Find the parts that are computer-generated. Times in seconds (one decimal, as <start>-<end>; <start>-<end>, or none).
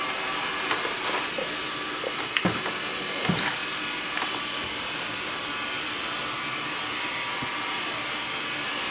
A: 1.4-2.2; 3.6-5.5